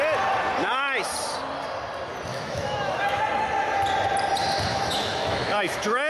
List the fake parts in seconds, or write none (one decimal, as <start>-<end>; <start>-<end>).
2.3-3.2; 4.7-6.1